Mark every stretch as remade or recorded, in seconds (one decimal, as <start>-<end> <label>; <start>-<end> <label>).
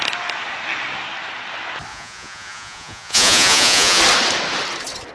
0.0-1.9 recorded; 1.9-4.0 remade; 4.0-5.1 recorded